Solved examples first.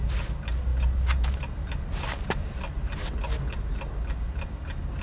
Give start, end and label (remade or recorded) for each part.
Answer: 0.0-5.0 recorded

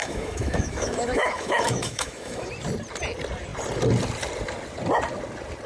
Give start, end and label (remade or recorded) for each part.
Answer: 0.0-2.5 remade; 2.5-5.7 recorded

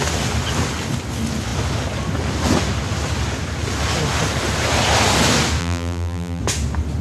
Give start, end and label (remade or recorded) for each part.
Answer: 0.0-5.6 recorded; 5.6-6.4 remade; 6.4-7.0 recorded

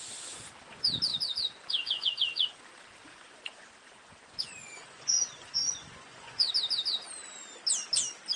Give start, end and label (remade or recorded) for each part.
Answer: 0.0-1.1 recorded; 1.1-2.6 remade; 2.6-3.1 recorded; 3.1-6.5 remade; 6.5-8.4 recorded

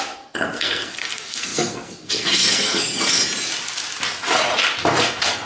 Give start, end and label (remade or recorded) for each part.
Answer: 0.0-3.2 remade; 3.2-5.0 recorded; 5.0-5.5 remade